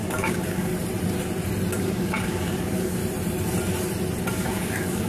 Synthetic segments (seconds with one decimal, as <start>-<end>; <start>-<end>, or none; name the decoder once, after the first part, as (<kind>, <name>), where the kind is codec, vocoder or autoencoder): 0.0-0.7 (codec, DAC); 1.7-3.0; 4.3-5.1